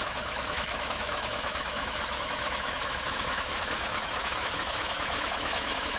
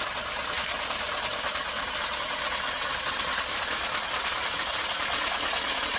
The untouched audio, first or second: second